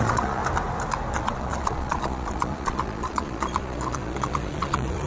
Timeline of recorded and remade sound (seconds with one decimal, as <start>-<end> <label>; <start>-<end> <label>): 0.0-0.4 remade; 0.4-1.1 recorded; 1.1-5.1 remade